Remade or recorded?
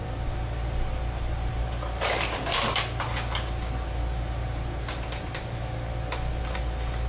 recorded